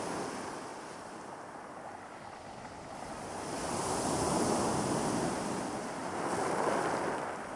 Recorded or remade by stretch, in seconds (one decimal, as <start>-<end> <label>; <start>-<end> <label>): 0.0-7.6 recorded